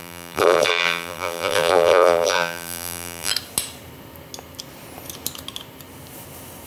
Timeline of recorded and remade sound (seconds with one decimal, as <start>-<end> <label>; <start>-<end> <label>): 0.0-3.3 remade; 3.3-6.7 recorded

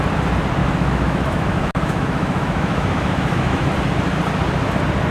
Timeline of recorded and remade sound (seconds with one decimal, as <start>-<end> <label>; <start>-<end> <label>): 0.0-0.6 recorded; 0.6-3.7 remade; 3.7-5.1 recorded

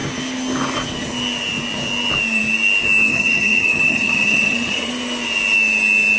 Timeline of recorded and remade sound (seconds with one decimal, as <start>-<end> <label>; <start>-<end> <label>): 0.0-3.1 recorded; 3.1-4.9 remade; 4.9-6.2 recorded

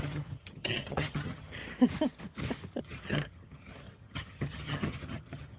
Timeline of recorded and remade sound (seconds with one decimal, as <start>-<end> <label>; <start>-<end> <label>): 0.0-1.6 remade; 1.6-2.8 recorded; 2.8-5.6 remade

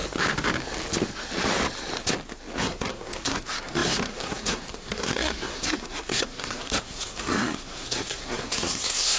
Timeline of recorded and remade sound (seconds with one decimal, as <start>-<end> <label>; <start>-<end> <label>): 0.0-2.6 recorded; 2.6-9.2 remade

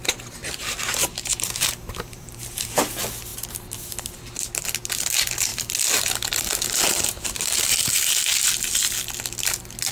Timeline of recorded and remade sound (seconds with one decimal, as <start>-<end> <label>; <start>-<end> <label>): 0.0-0.4 recorded; 0.4-2.8 remade; 2.8-6.9 recorded; 6.9-8.0 remade; 8.0-9.9 recorded

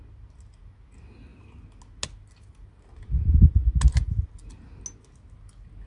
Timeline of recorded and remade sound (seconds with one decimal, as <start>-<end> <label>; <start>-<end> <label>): 0.0-5.9 recorded

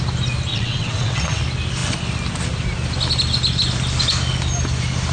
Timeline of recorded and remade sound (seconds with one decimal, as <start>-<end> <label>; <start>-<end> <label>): 0.0-0.5 recorded; 0.5-1.4 remade; 1.4-5.1 recorded